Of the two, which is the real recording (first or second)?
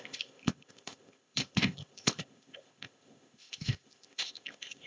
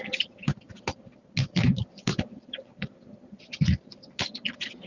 second